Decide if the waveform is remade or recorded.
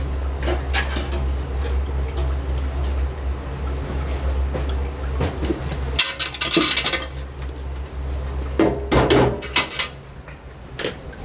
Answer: recorded